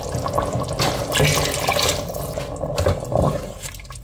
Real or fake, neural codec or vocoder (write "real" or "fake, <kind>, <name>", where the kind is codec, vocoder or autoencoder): real